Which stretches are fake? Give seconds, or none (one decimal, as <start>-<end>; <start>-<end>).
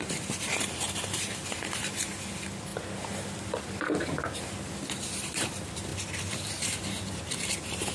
none